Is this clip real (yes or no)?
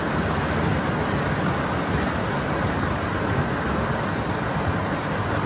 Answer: yes